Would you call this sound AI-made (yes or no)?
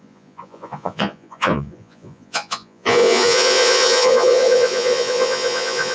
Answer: yes